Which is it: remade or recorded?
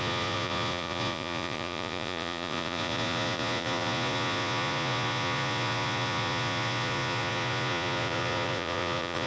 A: remade